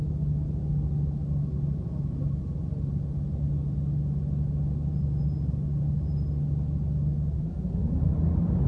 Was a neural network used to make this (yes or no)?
no